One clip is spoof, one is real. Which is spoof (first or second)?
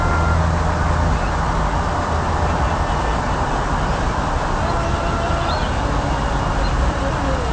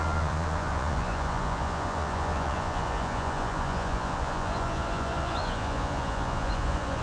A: second